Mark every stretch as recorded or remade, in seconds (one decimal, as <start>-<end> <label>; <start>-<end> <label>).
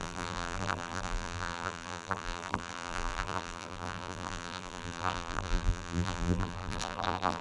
0.0-7.4 remade